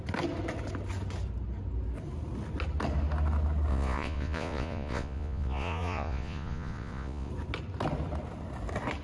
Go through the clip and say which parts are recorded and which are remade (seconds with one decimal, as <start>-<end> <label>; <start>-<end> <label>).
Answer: 0.0-3.7 recorded; 3.7-7.3 remade; 7.3-9.0 recorded